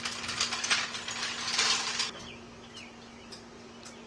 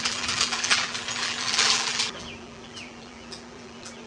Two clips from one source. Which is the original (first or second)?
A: first